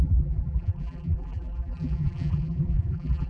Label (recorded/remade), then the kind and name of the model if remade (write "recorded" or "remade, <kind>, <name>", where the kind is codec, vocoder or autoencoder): remade, vocoder, BigVGAN v2